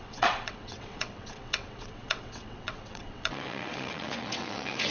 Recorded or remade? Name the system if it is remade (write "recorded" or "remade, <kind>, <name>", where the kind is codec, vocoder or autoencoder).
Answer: remade, vocoder, WaveNeXt